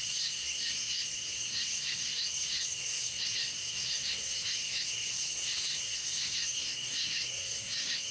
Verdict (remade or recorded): remade